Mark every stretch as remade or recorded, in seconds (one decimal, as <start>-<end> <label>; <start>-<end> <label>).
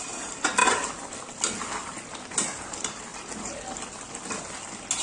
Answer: 0.0-5.0 recorded